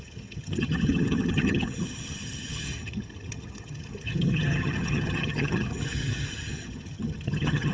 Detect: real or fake fake